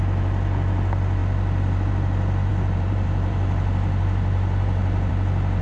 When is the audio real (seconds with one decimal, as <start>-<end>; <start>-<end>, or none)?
0.0-2.5; 5.1-5.6